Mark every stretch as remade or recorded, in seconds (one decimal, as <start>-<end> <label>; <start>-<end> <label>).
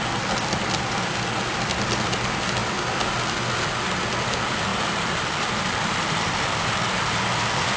0.0-4.7 recorded; 4.7-7.3 remade; 7.3-7.8 recorded